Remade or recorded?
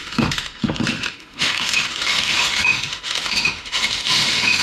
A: remade